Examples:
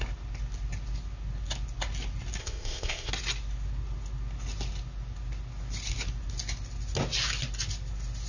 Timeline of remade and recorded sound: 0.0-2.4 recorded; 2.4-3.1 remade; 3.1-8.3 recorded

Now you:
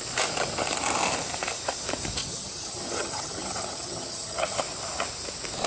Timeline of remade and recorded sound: 0.0-2.2 recorded; 2.2-4.6 remade; 4.6-5.7 recorded